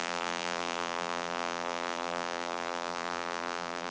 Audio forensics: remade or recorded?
remade